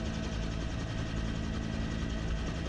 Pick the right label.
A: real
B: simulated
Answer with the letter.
A